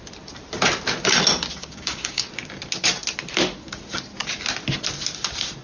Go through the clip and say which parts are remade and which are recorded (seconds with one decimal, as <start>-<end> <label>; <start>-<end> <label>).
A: 0.0-1.6 recorded; 1.6-2.3 remade; 2.3-5.6 recorded